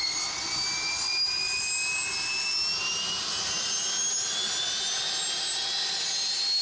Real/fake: real